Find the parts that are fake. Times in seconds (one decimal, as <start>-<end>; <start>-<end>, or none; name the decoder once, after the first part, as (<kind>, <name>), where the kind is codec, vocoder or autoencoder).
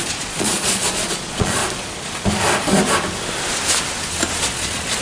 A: 0.0-1.6 (vocoder, Vocos); 4.4-5.0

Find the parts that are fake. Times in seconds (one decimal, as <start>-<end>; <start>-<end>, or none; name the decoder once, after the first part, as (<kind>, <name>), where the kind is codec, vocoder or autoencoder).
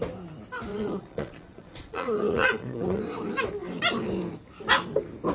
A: 0.7-3.0 (vocoder, Vocos)